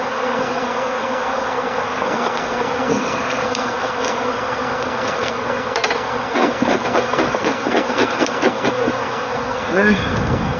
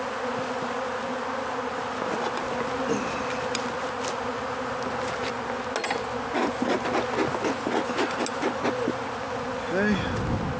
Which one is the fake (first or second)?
first